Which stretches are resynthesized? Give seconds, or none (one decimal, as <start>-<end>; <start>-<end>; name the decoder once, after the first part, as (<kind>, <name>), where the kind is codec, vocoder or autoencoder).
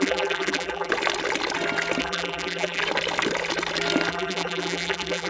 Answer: 0.0-0.9 (vocoder, BigVGAN v2); 2.0-2.8; 4.1-5.3